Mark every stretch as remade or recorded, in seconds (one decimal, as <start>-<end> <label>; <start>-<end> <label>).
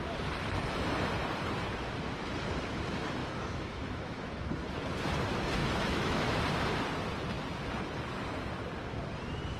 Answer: 0.0-3.2 recorded; 3.2-4.5 remade; 4.5-5.6 recorded; 5.6-6.4 remade; 6.4-9.6 recorded